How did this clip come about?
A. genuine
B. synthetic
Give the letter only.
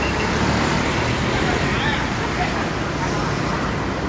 A